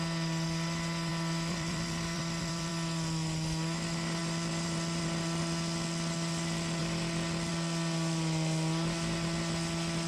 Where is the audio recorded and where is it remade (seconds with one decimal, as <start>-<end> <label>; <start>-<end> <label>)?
0.0-1.1 recorded; 1.1-2.7 remade; 2.7-4.2 recorded; 4.2-5.4 remade; 5.4-10.1 recorded